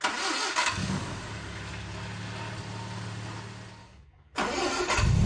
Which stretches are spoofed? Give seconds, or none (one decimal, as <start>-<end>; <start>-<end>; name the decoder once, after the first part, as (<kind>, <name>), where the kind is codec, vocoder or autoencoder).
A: 0.6-1.6 (codec, DAC); 3.8-4.7